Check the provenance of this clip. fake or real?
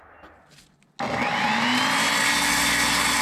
real